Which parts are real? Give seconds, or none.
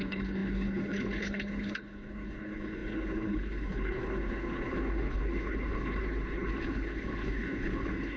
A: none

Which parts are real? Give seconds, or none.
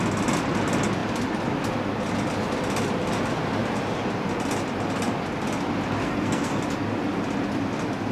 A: 0.0-6.0; 6.6-8.1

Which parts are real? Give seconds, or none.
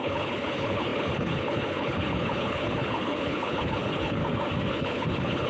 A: 4.2-4.7